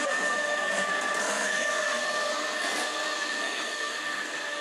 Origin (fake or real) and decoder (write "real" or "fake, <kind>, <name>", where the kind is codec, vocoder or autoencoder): fake, codec, SNAC